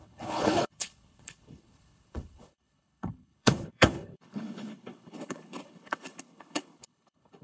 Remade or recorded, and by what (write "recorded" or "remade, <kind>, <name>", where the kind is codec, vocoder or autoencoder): remade, codec, HILCodec